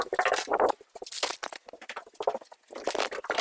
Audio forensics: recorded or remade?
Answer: recorded